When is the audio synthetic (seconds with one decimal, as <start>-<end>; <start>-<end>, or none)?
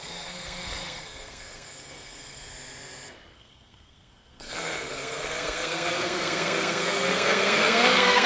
0.0-2.5; 3.3-8.3